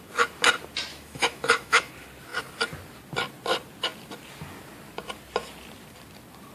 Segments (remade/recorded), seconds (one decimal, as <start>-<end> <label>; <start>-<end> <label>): 0.0-0.9 recorded; 0.9-1.9 remade; 1.9-6.5 recorded